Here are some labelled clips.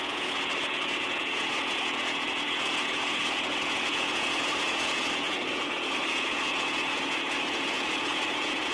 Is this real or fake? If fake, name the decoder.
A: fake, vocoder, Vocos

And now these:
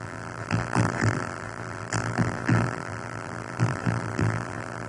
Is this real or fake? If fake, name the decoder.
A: fake, vocoder, BigVGAN v2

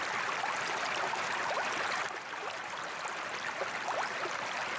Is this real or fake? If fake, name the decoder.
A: real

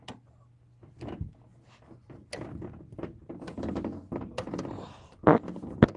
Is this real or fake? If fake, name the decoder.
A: real